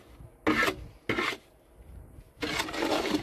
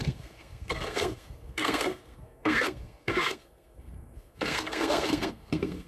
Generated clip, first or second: second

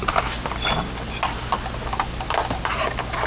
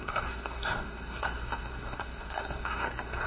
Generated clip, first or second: second